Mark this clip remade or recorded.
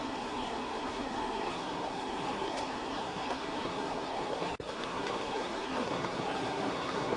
remade